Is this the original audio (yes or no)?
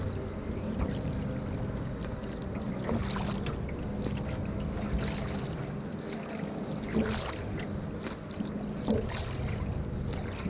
yes